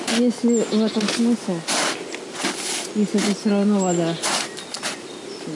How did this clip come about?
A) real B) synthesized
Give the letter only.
A